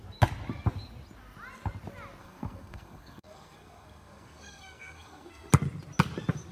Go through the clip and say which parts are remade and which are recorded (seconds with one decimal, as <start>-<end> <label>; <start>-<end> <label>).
0.0-2.2 recorded; 2.2-5.5 remade; 5.5-6.5 recorded